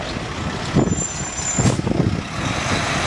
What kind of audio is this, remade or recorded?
recorded